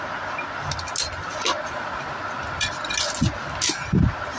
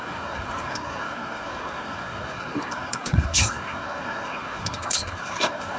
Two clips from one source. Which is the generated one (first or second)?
second